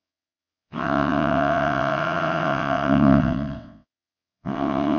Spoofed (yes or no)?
yes